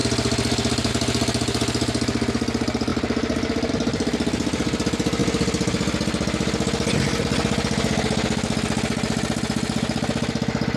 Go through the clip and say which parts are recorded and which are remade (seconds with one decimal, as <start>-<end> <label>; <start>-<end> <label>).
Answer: 0.0-10.8 recorded